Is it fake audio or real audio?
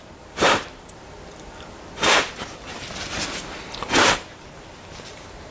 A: real